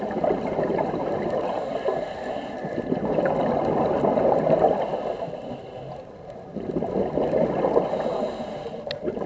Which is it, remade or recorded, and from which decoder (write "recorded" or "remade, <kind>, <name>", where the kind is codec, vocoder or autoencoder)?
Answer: recorded